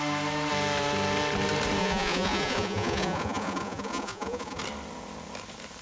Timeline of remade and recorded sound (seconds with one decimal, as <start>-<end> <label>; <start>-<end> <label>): 0.0-1.8 recorded; 1.8-4.6 remade; 4.6-5.8 recorded